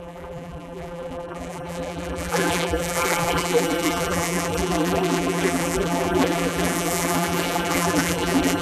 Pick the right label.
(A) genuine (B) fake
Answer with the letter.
B